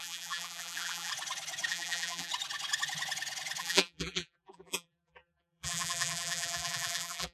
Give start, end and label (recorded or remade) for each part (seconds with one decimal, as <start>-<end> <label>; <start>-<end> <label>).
0.0-1.1 remade; 1.1-1.7 recorded; 1.7-2.3 remade; 2.3-3.6 recorded; 3.6-7.3 remade